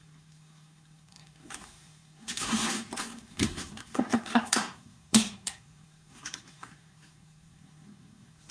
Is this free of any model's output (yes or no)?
no